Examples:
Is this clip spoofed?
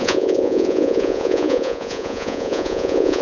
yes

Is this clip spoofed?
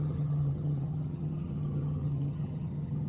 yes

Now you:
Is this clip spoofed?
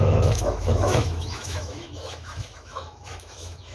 yes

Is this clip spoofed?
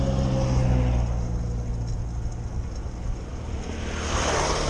no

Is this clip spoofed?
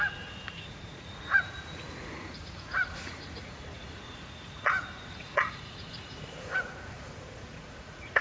yes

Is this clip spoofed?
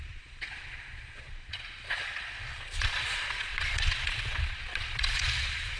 yes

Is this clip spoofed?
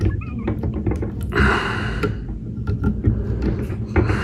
no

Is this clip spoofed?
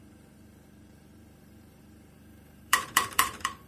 yes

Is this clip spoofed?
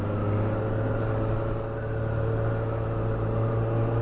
no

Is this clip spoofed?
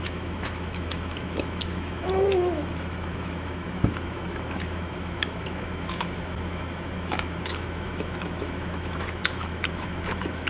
yes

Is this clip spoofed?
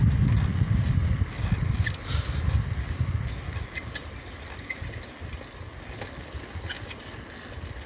no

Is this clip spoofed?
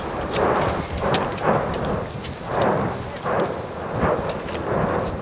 no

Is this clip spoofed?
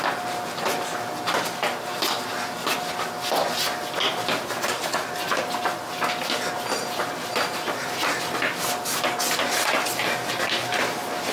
no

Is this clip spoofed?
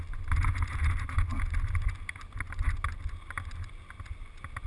no